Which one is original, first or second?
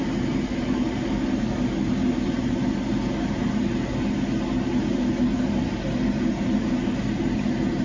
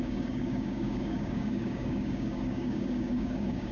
first